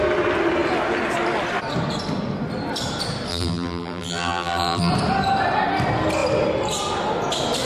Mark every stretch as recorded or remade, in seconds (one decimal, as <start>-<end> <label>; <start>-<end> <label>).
0.0-3.3 recorded; 3.3-4.9 remade; 4.9-7.6 recorded